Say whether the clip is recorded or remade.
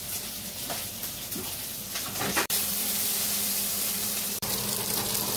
remade